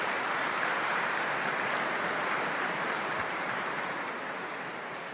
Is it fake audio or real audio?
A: fake